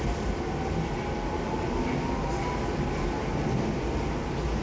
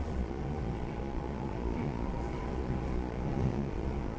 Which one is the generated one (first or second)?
second